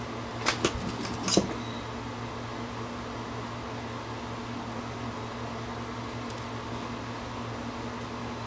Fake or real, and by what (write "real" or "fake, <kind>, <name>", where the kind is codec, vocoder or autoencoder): real